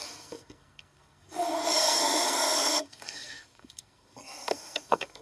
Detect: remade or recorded remade